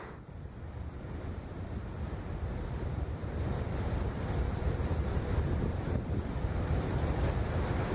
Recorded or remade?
remade